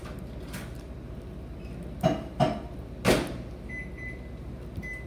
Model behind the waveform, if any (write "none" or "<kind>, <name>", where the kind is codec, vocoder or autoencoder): none